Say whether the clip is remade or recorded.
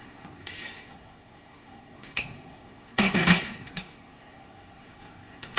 remade